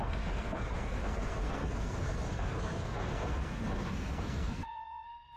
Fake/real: fake